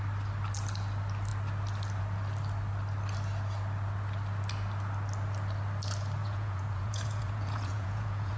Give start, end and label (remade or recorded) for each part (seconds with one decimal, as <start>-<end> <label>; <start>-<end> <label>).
0.0-6.2 recorded; 6.2-8.4 remade